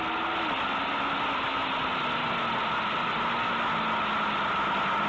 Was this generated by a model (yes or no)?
no